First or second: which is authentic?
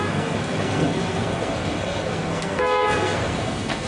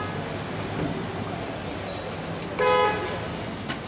second